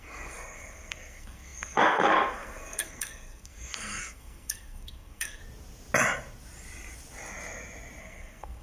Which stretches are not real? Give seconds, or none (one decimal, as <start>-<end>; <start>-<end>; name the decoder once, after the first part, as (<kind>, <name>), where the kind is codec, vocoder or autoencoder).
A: 0.0-5.4 (codec, SNAC); 8.0-8.6